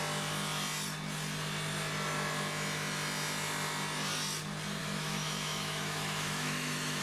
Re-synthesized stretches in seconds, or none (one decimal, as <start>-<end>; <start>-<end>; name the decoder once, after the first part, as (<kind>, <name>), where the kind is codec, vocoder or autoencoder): 4.8-7.0 (autoencoder, DAC-VAE)